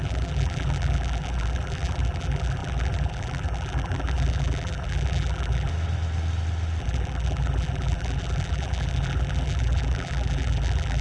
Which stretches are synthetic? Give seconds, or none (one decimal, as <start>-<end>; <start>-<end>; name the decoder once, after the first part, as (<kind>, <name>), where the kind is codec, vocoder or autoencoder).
0.0-5.7 (vocoder, BigVGAN v2); 6.8-11.0